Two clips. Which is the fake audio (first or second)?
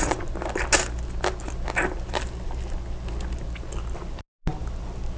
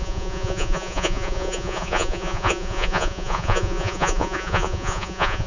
second